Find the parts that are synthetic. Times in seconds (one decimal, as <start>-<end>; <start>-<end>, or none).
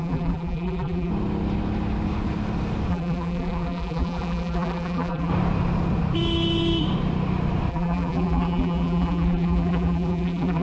0.0-1.1; 2.9-5.3; 7.7-10.6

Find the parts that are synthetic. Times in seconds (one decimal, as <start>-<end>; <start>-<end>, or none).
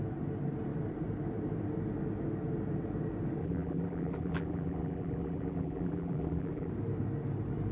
3.4-6.7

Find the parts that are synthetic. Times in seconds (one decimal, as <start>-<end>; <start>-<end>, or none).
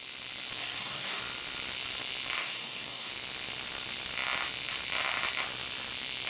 0.6-1.2; 2.4-3.1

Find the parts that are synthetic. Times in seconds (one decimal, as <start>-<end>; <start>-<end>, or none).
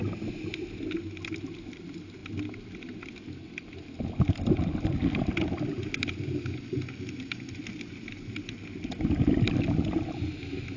none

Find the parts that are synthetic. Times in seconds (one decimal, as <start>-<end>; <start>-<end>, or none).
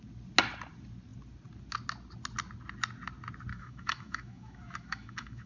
3.5-5.5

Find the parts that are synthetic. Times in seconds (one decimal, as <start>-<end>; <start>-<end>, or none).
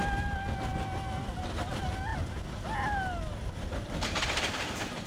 none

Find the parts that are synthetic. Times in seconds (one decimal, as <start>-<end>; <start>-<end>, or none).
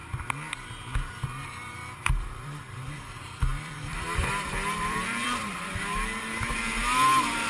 1.1-7.5